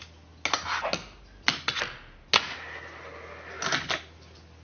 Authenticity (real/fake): real